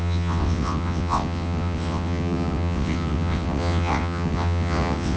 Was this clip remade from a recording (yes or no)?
yes